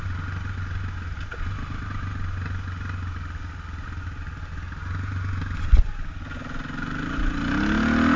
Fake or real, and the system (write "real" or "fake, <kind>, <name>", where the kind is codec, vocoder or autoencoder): real